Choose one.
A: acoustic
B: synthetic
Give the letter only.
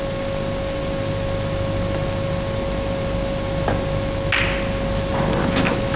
A